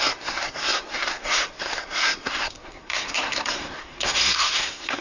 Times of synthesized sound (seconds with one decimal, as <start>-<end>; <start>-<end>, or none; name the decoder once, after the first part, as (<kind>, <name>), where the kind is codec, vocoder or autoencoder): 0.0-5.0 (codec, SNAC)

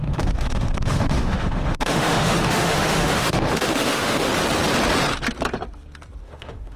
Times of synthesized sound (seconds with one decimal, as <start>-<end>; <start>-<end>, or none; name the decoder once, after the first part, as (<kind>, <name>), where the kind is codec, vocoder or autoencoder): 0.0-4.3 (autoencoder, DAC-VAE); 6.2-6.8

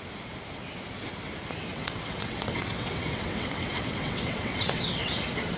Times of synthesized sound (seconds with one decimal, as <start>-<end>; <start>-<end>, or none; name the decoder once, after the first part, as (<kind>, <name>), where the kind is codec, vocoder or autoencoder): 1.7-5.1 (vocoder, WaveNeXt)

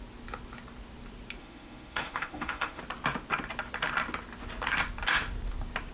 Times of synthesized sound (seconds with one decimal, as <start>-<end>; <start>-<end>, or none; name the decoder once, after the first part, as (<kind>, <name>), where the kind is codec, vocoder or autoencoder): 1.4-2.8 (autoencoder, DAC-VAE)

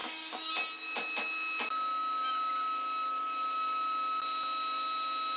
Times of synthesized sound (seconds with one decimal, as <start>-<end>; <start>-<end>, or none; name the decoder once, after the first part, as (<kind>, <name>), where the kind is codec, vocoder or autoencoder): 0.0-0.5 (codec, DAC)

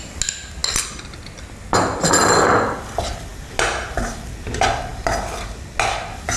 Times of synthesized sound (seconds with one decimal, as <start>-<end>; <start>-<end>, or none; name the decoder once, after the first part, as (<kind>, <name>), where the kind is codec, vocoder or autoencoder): none

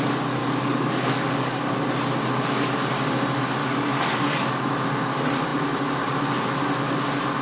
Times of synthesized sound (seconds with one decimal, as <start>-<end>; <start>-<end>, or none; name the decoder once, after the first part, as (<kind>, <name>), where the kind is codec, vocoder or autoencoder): 0.4-1.7 (codec, DAC); 3.6-4.7

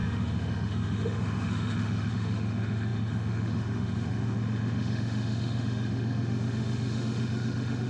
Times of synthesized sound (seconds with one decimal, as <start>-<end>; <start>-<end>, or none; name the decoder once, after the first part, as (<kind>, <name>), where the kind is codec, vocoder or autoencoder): 0.0-7.9 (autoencoder, DAC-VAE)